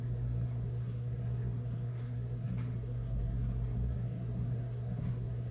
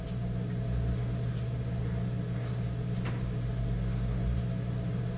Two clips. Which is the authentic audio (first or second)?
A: second